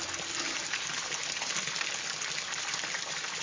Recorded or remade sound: recorded